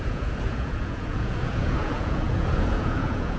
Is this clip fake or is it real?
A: fake